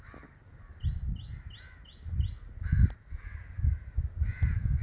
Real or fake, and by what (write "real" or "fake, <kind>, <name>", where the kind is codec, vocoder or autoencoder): real